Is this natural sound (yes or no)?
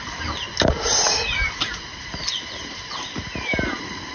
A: yes